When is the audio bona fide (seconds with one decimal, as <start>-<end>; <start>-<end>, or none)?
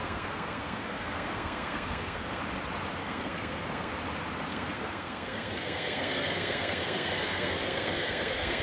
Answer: 2.4-3.0; 3.9-4.5